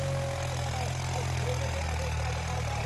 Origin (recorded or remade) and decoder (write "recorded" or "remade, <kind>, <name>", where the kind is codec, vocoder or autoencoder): recorded